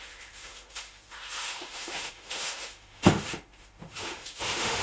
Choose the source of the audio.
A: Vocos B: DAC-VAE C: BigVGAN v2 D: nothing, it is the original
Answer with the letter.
B